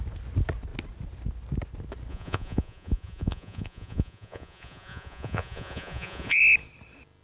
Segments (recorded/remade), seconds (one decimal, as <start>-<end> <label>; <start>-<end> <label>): 0.0-2.1 recorded; 2.1-6.4 remade; 6.4-7.2 recorded